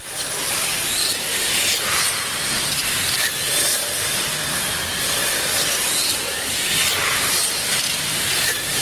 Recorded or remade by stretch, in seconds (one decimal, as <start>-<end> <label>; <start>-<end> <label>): 0.0-8.8 recorded